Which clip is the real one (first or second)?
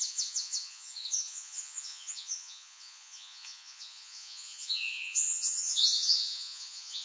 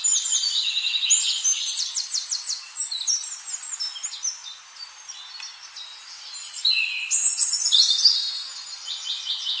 second